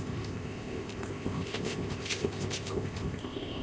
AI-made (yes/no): yes